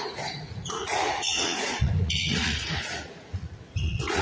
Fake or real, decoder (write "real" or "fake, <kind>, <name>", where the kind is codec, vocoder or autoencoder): fake, vocoder, Vocos